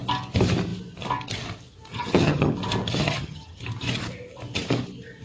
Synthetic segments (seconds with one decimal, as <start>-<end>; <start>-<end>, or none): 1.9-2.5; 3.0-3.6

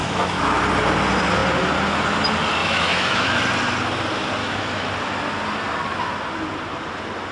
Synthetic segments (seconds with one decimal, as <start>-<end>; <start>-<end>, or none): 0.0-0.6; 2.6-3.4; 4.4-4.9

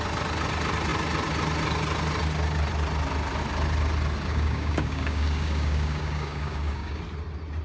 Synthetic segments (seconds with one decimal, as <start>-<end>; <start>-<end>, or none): 4.3-7.0

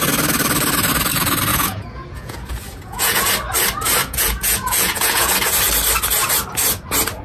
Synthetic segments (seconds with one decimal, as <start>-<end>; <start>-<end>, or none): 1.5-3.3; 4.0-5.3

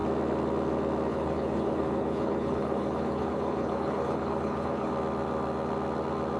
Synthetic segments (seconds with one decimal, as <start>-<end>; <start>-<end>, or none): 1.1-4.9